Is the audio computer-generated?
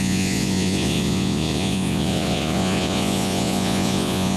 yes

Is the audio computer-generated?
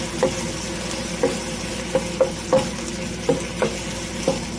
no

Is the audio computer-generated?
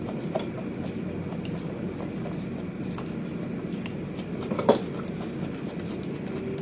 no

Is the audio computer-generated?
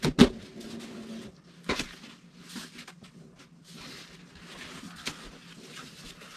no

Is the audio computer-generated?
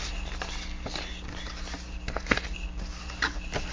no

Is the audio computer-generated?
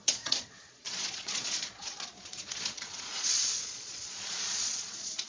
yes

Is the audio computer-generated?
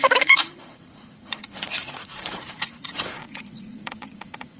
yes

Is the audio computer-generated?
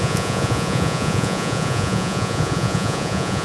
yes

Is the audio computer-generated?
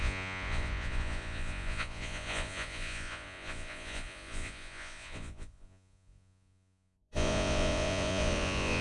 yes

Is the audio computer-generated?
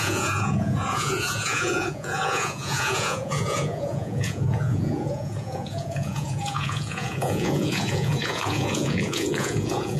yes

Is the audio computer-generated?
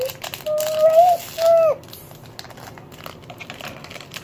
no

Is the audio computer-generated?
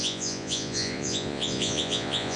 yes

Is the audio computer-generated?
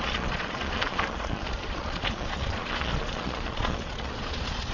yes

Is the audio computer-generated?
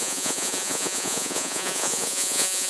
yes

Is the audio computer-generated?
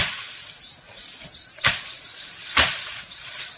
no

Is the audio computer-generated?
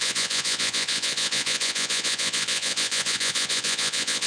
yes